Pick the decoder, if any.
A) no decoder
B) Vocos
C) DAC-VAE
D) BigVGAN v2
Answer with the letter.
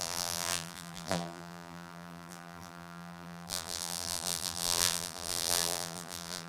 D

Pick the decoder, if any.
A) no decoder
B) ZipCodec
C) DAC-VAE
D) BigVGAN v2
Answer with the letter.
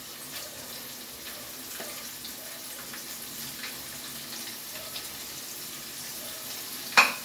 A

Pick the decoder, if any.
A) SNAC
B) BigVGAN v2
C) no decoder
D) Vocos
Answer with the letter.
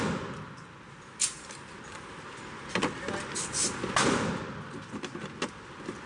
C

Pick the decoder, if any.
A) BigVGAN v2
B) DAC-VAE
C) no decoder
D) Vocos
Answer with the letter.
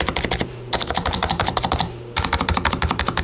A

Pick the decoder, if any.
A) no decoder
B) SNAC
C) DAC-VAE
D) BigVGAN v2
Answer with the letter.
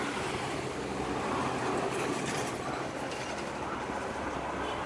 D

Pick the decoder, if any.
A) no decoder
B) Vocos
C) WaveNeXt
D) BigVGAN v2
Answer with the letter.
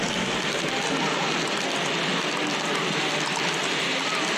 A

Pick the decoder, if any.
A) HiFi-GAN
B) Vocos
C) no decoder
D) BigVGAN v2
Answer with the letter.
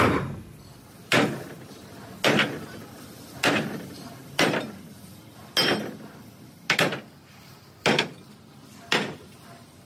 C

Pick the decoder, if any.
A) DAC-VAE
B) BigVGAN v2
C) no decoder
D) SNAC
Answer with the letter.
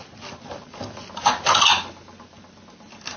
C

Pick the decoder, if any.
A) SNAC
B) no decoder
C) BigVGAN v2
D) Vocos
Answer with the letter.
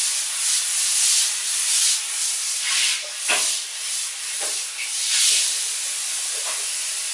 C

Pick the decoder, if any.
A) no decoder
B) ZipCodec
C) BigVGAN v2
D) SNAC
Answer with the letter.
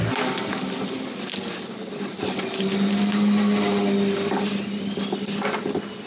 A